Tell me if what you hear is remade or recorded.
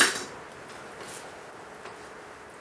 recorded